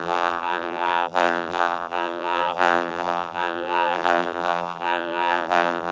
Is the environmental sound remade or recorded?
remade